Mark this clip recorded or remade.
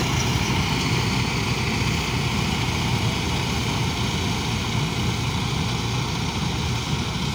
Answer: recorded